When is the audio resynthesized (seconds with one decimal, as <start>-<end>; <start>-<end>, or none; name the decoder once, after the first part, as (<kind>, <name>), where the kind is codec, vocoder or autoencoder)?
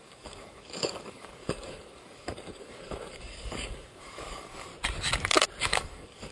0.0-4.7 (codec, DAC); 5.6-6.3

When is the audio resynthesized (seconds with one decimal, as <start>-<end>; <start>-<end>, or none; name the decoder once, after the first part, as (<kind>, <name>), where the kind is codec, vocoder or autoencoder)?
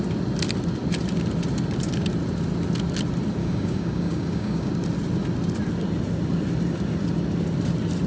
3.4-4.7 (codec, DAC)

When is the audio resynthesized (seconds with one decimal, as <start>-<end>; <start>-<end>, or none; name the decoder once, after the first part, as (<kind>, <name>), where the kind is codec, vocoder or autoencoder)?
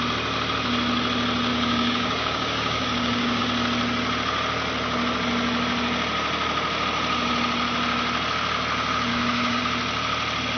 1.5-3.4 (codec, DAC); 9.1-9.6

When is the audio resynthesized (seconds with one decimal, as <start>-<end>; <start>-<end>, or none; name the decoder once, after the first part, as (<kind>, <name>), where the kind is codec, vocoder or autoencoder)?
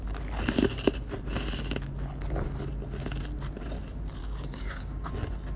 4.2-5.1 (codec, DAC)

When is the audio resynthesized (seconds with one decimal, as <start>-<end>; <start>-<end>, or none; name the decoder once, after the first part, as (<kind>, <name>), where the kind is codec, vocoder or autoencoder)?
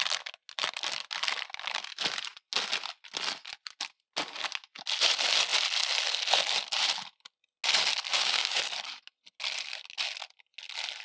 8.1-8.6 (codec, DAC)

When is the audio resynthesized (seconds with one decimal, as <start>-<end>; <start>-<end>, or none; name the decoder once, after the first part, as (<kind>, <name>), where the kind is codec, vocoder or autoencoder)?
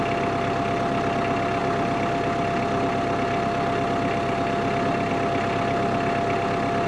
none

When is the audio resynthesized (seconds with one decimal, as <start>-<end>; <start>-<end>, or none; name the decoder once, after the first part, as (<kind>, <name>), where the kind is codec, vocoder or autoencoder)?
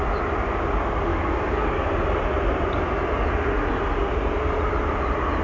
1.1-1.9 (codec, DAC)